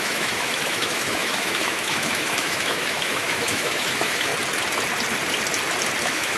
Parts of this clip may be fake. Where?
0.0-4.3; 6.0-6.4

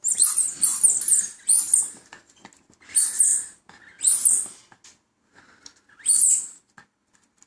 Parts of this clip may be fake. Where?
none

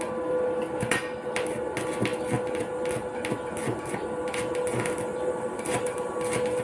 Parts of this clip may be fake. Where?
none

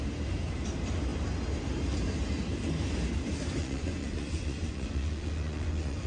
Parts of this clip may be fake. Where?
3.6-6.1

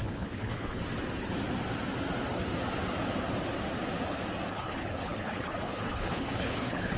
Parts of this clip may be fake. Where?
0.0-0.8; 4.5-7.0

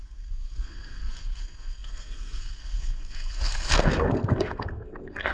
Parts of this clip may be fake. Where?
0.0-5.3

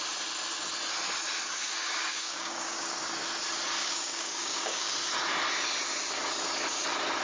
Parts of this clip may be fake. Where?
1.6-3.0; 3.8-4.9

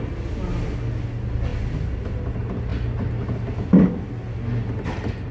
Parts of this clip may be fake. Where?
none